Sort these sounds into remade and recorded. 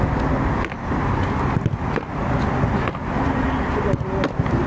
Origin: recorded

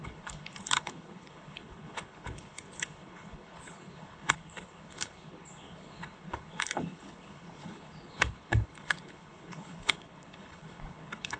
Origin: remade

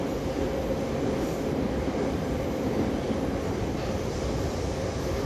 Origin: recorded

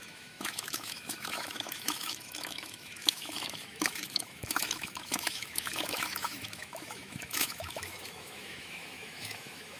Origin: remade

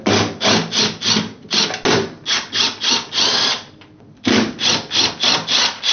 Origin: recorded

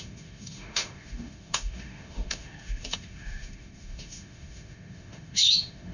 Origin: remade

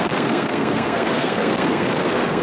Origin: remade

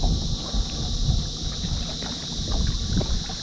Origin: recorded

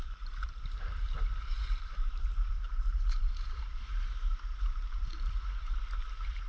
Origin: remade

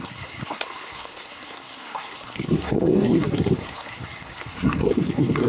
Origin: remade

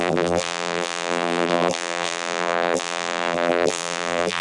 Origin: remade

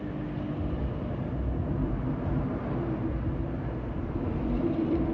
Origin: remade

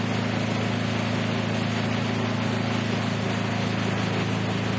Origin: recorded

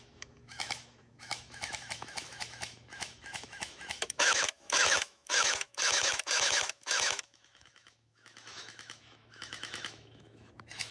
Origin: remade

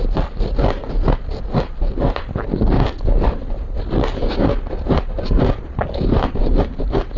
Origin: recorded